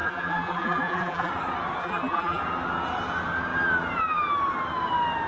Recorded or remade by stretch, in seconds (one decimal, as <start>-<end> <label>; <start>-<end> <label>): 0.0-1.3 remade; 1.3-1.8 recorded; 1.8-2.4 remade; 2.4-5.3 recorded